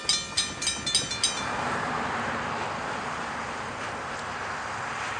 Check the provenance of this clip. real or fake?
real